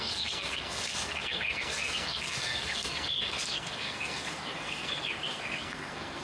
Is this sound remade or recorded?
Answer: remade